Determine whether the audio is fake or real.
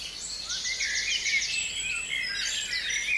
real